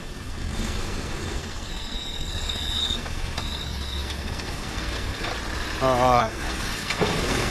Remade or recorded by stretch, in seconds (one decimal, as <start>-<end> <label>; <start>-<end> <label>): 0.0-5.3 remade; 5.3-6.2 recorded; 6.2-7.5 remade